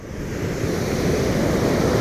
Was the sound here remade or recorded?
recorded